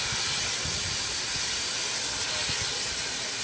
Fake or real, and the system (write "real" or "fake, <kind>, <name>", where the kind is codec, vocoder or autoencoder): real